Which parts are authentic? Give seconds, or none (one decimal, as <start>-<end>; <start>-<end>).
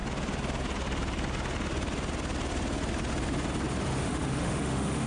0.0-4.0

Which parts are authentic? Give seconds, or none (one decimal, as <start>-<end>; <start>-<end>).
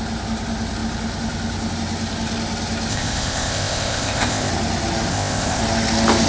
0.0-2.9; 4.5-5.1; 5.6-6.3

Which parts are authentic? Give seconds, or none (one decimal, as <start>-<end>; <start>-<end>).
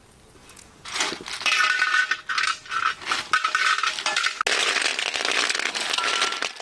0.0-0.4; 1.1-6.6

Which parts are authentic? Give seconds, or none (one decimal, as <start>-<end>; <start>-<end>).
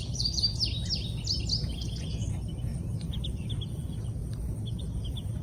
0.0-2.7; 3.5-5.4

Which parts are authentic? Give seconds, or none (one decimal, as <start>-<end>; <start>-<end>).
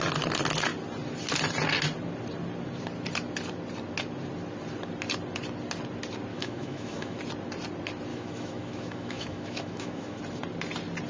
0.0-6.3; 7.2-8.1; 10.2-11.1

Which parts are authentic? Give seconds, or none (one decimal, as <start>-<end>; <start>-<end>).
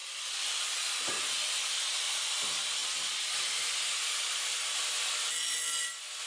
0.0-6.3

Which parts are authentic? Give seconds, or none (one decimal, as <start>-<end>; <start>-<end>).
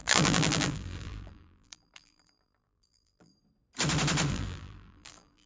3.3-4.3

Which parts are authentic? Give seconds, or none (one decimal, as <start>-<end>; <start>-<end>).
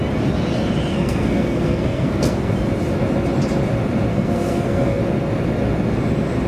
0.0-0.9; 2.5-4.1; 5.0-6.5